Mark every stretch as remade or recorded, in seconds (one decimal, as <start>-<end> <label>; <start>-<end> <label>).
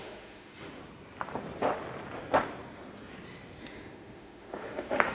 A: 0.0-0.5 remade; 0.5-3.6 recorded; 3.6-5.1 remade